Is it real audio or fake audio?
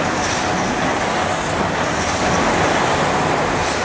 real